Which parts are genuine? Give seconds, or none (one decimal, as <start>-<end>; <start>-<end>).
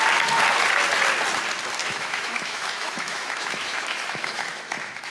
0.0-1.8